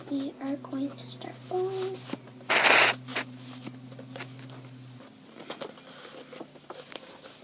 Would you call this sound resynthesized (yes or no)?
no